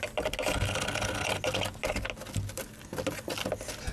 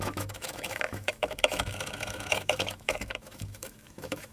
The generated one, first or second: second